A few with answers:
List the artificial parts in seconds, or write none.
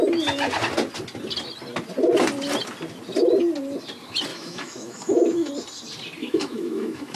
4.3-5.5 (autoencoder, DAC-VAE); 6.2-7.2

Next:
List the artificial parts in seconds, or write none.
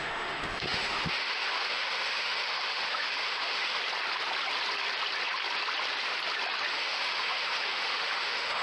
0.0-3.8 (autoencoder, DAC-VAE); 6.7-8.6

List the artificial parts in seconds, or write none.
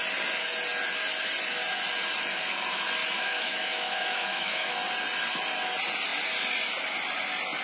3.0-4.7 (autoencoder, DAC-VAE)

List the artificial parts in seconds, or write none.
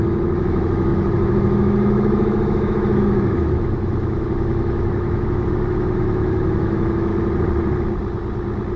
0.0-7.1 (autoencoder, DAC-VAE)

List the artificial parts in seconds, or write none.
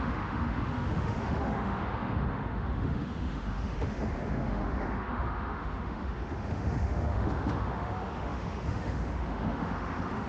0.0-10.3 (autoencoder, DAC-VAE)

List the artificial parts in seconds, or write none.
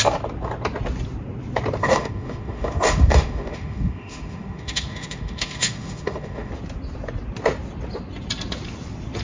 1.8-6.5 (autoencoder, DAC-VAE)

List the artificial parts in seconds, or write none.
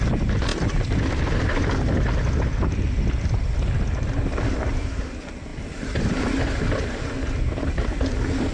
none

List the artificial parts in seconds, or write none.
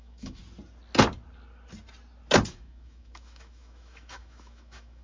0.0-0.4 (autoencoder, DAC-VAE); 2.5-5.0